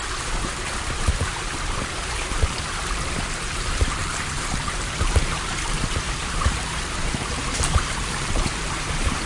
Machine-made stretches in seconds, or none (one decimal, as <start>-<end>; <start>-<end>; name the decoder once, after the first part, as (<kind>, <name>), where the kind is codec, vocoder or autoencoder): 0.0-9.3 (vocoder, BigVGAN v2)